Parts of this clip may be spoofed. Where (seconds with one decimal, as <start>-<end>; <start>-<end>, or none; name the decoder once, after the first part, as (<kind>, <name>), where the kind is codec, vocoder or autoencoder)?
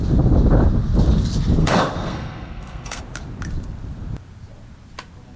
1.6-3.0 (codec, SNAC)